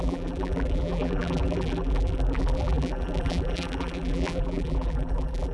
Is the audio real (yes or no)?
no